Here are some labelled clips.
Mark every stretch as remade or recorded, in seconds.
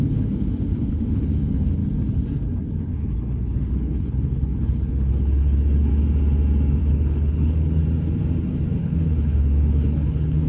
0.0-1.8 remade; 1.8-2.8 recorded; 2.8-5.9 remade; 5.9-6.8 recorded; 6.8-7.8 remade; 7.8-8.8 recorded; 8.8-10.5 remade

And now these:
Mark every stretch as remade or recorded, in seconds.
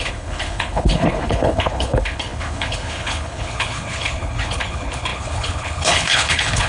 0.0-6.7 remade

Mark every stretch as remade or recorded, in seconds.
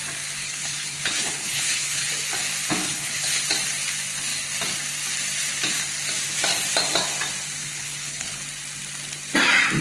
0.0-0.4 recorded; 0.4-2.1 remade; 2.1-2.8 recorded; 2.8-3.4 remade; 3.4-7.6 recorded; 7.6-8.4 remade; 8.4-9.8 recorded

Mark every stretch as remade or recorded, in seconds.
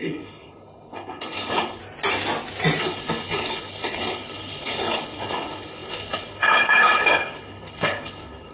0.0-1.8 remade; 1.8-2.8 recorded; 2.8-8.5 remade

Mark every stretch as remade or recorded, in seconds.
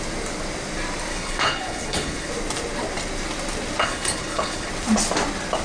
0.0-1.1 recorded; 1.1-2.3 remade; 2.3-3.8 recorded; 3.8-4.7 remade; 4.7-5.6 recorded